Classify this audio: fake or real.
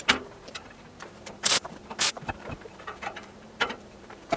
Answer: fake